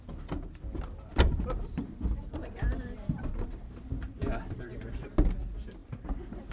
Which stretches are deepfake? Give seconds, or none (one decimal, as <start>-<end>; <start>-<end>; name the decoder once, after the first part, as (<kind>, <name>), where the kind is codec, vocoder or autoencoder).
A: 1.1-4.9 (vocoder, BigVGAN v2); 5.8-6.5